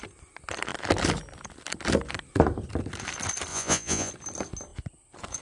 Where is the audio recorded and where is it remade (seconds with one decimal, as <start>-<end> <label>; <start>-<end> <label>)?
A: 0.0-3.5 recorded; 3.5-4.1 remade; 4.1-5.4 recorded